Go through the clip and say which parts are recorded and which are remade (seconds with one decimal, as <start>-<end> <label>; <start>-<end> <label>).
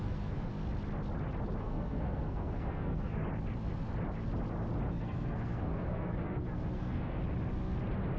0.0-0.5 remade; 0.5-1.6 recorded; 1.6-3.2 remade; 3.2-4.9 recorded; 4.9-7.2 remade; 7.2-8.2 recorded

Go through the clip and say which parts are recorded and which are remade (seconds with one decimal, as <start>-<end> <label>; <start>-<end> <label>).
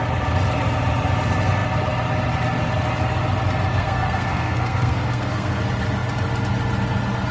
0.0-3.7 recorded; 3.7-5.6 remade; 5.6-7.3 recorded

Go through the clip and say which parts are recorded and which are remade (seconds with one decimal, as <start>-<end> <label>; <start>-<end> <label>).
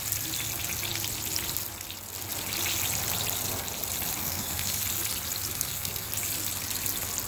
0.0-4.2 recorded; 4.2-4.8 remade; 4.8-5.5 recorded; 5.5-6.1 remade; 6.1-7.3 recorded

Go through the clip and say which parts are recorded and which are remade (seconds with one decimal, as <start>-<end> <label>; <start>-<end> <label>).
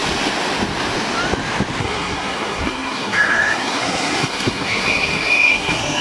0.0-1.8 recorded; 1.8-6.0 remade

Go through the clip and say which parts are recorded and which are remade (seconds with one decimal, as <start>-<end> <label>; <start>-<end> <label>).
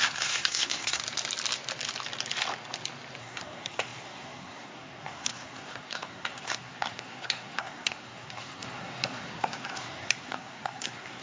0.0-1.0 remade; 1.0-3.2 recorded; 3.2-11.2 remade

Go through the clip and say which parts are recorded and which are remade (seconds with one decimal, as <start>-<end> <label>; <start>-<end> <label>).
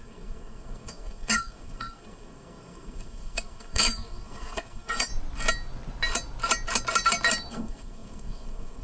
0.0-5.1 remade; 5.1-7.5 recorded; 7.5-8.8 remade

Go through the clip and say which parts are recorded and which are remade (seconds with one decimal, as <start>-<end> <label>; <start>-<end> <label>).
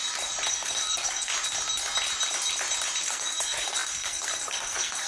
0.0-0.5 recorded; 0.5-1.3 remade; 1.3-3.0 recorded; 3.0-5.1 remade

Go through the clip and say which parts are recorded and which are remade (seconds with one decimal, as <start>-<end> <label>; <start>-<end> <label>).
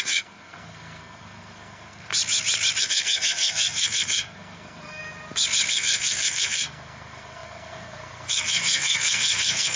0.0-2.1 remade; 2.1-2.8 recorded; 2.8-5.0 remade; 5.0-5.7 recorded; 5.7-9.8 remade